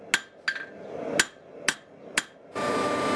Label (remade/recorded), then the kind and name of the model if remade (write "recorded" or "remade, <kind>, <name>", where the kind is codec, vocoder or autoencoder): recorded